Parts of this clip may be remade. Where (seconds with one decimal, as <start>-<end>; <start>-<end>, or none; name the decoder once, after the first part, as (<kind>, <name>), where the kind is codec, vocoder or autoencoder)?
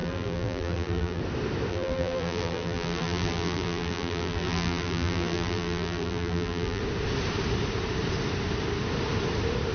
0.0-1.2 (vocoder, BigVGAN v2); 1.7-6.8